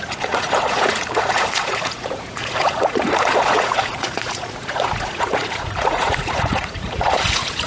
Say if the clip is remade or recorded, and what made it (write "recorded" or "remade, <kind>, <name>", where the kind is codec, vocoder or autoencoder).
remade, vocoder, Vocos